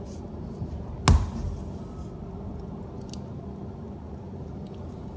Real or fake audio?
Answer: real